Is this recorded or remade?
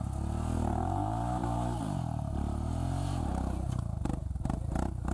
recorded